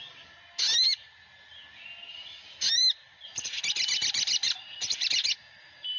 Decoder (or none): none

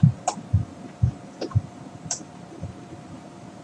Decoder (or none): vocoder, BigVGAN v2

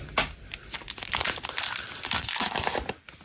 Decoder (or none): vocoder, BigVGAN v2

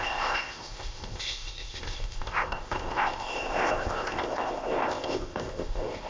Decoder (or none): codec, ZipCodec